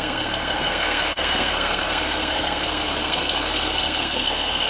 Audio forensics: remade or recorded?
remade